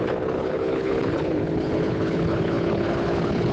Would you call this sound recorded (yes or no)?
no